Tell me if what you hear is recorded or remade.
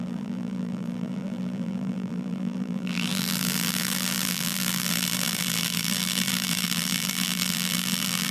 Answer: remade